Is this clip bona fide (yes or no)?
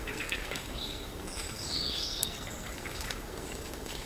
no